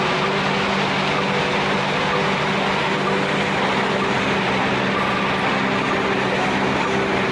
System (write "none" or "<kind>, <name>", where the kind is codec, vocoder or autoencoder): none